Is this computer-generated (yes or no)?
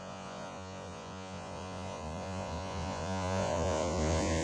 yes